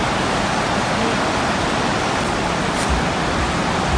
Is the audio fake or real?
real